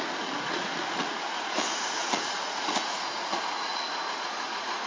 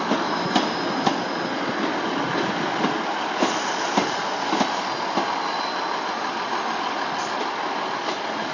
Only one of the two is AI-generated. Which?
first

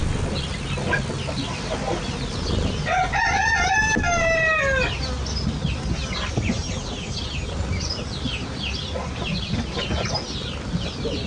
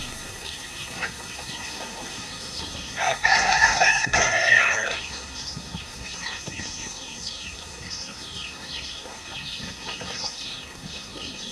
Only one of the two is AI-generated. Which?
second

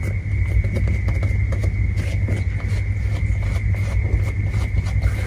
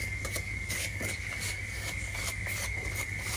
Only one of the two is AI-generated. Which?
second